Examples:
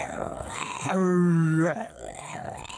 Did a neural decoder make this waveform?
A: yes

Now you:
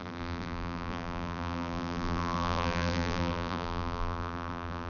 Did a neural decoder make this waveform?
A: yes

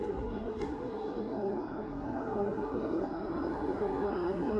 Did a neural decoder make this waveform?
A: yes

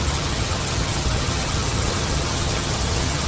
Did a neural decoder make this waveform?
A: yes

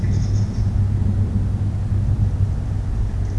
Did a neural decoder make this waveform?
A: no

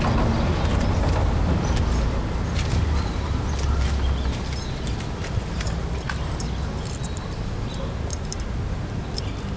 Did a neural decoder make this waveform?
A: no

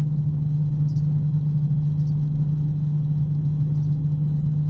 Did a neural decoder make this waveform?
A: no